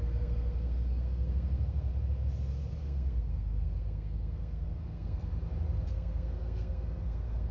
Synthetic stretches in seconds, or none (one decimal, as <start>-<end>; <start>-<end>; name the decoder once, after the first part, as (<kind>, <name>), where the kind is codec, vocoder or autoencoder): 0.0-1.9 (codec, SNAC); 2.8-5.3; 5.9-7.5